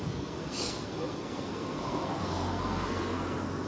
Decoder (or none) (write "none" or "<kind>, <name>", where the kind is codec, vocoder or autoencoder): codec, SNAC